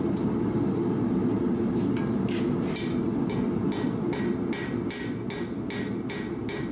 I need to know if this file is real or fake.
real